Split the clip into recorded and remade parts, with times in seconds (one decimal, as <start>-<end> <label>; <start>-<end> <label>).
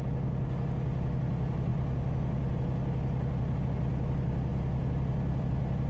0.0-5.9 recorded